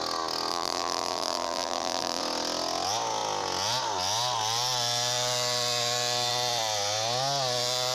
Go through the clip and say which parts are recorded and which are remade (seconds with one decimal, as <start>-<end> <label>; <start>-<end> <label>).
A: 0.0-0.5 recorded; 0.5-2.2 remade; 2.2-7.9 recorded